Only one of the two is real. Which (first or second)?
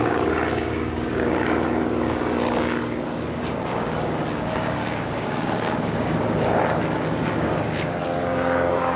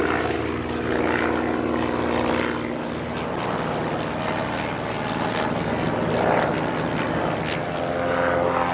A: second